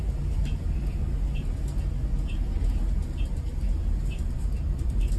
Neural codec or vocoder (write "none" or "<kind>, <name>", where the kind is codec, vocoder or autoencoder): none